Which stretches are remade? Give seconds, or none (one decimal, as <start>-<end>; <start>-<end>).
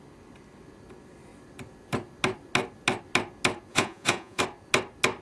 3.7-4.4